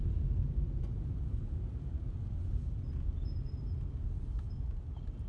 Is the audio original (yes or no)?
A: yes